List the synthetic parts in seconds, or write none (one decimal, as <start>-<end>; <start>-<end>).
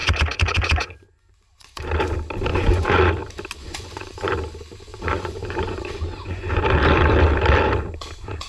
0.0-1.8; 2.5-3.1; 3.6-4.3; 4.9-6.6